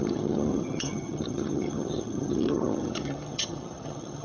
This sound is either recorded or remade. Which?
remade